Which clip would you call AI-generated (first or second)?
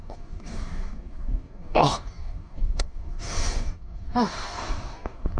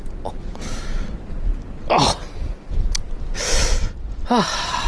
first